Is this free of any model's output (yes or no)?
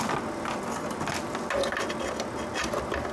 yes